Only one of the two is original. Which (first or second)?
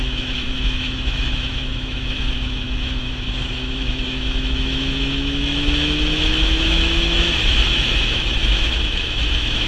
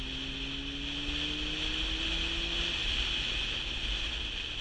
second